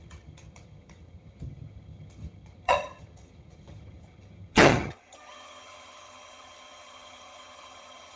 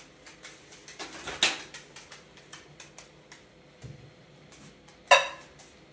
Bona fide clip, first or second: second